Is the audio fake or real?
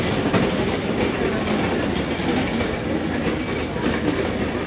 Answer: real